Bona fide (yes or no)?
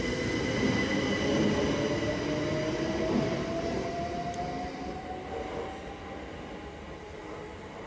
yes